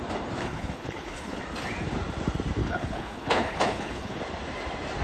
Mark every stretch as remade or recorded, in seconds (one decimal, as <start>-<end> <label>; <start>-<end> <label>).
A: 0.0-0.4 recorded; 0.4-1.4 remade; 1.4-2.6 recorded; 2.6-4.2 remade; 4.2-5.0 recorded